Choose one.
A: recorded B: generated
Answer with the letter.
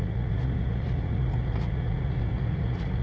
B